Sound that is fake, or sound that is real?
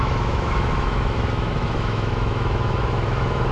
fake